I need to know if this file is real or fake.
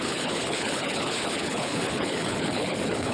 fake